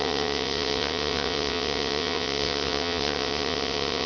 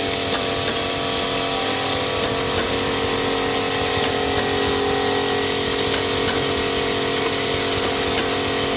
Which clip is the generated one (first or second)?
first